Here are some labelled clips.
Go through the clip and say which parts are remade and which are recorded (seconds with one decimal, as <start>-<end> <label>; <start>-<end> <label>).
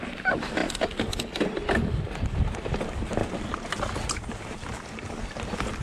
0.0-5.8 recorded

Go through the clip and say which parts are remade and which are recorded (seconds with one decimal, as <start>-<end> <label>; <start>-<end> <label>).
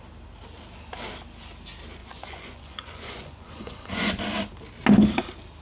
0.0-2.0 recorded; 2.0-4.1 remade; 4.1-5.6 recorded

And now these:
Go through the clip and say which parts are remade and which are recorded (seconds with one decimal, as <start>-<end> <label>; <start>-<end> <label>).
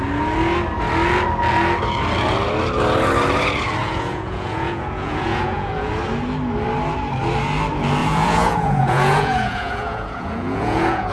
0.0-3.8 recorded; 3.8-5.9 remade; 5.9-8.0 recorded; 8.0-11.1 remade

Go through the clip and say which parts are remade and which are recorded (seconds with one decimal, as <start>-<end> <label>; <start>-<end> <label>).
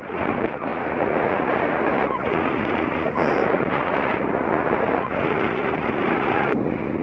0.0-7.0 remade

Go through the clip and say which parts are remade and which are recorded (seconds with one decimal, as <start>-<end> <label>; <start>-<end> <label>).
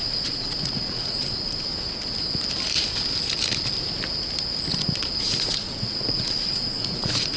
0.0-1.7 remade; 1.7-5.2 recorded; 5.2-7.4 remade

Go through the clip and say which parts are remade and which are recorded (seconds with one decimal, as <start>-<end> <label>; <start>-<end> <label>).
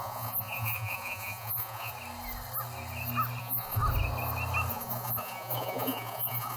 0.0-1.9 remade; 1.9-3.4 recorded; 3.4-3.8 remade; 3.8-4.7 recorded; 4.7-6.6 remade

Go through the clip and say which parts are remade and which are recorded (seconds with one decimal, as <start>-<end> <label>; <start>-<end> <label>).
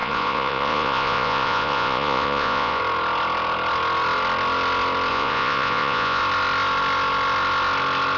0.0-2.8 remade; 2.8-5.1 recorded; 5.1-6.2 remade; 6.2-8.2 recorded